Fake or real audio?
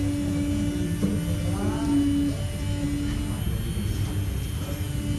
real